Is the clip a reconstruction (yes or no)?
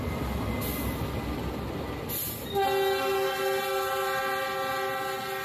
no